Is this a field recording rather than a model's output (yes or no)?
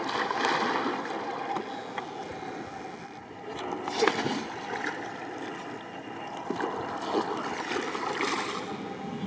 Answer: yes